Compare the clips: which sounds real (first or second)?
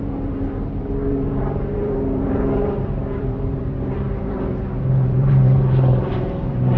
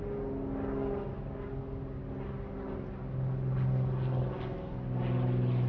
second